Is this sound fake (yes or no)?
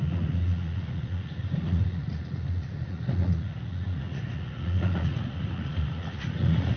yes